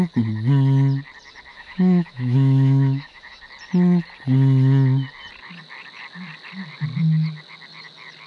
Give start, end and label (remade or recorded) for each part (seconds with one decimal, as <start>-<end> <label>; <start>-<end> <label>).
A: 0.0-1.5 recorded; 1.5-3.4 remade; 3.4-8.3 recorded